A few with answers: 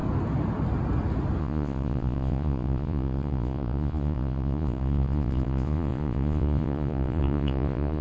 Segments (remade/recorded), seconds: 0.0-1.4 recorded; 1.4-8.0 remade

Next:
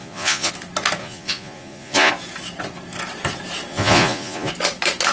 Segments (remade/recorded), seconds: 0.0-0.5 remade; 0.5-1.0 recorded; 1.0-2.1 remade; 2.1-3.7 recorded; 3.7-4.5 remade; 4.5-5.1 recorded

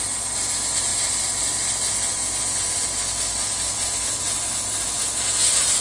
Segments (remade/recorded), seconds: 0.0-5.8 recorded